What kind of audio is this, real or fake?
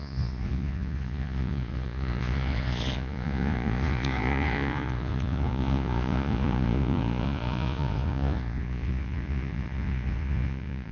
fake